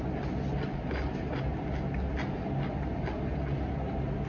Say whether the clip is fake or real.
real